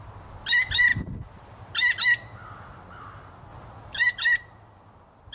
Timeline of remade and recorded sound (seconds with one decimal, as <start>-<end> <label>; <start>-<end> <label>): 0.0-5.3 recorded